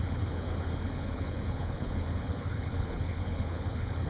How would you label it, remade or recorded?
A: remade